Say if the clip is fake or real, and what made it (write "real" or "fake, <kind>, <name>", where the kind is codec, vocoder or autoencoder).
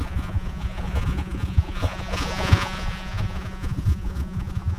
fake, vocoder, Vocos